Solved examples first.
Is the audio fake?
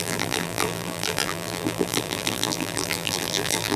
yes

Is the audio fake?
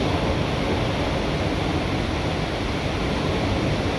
no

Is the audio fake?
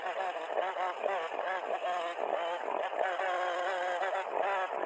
no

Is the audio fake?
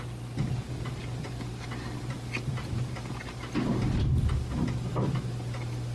no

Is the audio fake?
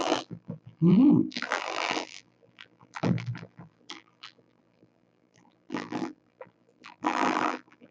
yes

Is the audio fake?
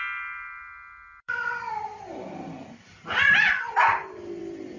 yes